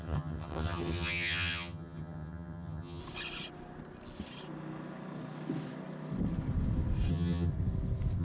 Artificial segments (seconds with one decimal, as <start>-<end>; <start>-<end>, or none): 0.0-3.0; 7.1-7.5